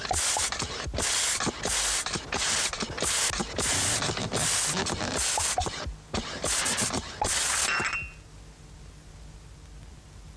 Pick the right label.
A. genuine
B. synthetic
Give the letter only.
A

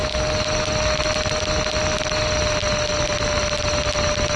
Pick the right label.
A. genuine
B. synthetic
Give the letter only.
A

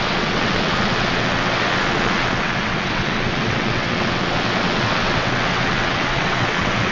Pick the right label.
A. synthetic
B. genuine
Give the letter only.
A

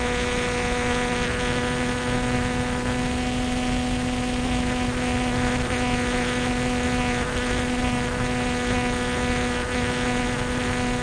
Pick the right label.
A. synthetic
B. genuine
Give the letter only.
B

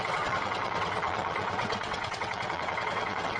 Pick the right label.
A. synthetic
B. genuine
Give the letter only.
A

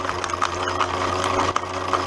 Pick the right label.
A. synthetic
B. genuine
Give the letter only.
B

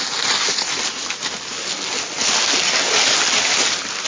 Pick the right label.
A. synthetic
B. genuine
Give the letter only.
B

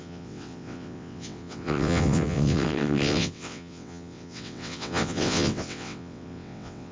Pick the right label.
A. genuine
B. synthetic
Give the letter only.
B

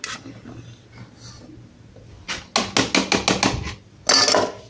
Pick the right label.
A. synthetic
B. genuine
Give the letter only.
B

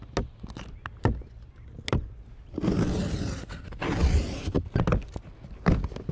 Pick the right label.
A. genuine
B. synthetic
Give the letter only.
A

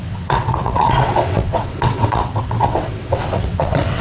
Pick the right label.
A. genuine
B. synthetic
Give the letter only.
B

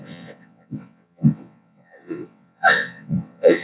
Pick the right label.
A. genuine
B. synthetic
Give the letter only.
B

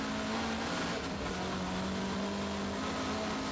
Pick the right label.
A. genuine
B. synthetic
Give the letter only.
A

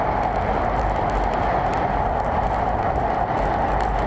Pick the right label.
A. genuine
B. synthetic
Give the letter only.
A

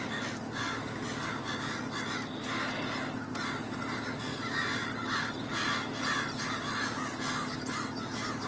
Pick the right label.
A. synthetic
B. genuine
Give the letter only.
B